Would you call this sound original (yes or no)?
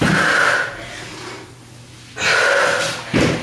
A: yes